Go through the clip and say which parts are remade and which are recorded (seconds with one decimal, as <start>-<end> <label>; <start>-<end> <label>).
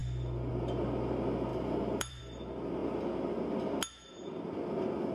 0.0-0.5 remade; 0.5-1.5 recorded; 1.5-2.2 remade; 2.2-5.1 recorded